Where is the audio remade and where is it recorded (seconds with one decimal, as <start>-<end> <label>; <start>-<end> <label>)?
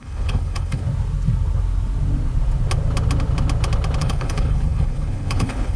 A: 0.0-0.8 remade; 0.8-4.0 recorded; 4.0-5.8 remade